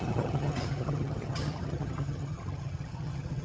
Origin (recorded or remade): remade